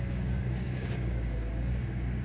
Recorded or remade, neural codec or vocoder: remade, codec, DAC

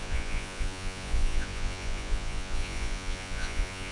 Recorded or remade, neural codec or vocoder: remade, vocoder, Vocos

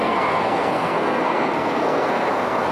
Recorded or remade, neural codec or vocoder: remade, codec, SNAC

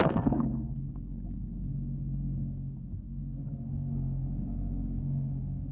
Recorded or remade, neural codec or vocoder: remade, codec, SNAC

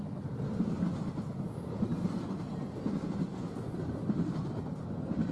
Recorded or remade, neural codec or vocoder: recorded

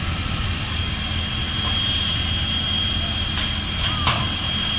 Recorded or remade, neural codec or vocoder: recorded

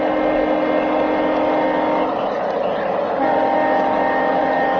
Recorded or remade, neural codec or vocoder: recorded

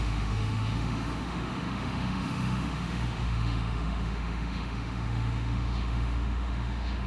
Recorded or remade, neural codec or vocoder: remade, autoencoder, DAC-VAE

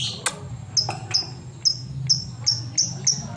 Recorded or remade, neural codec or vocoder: recorded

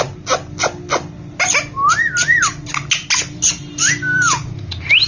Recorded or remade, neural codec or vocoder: recorded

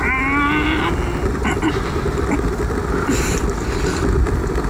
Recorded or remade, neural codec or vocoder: recorded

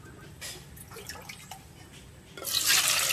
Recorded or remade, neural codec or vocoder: recorded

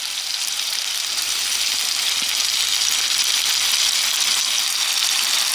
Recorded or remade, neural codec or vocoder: recorded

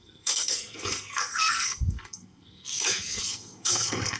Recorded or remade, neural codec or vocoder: remade, codec, SNAC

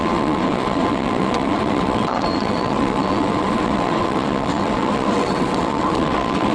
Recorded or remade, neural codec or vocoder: remade, vocoder, WaveNeXt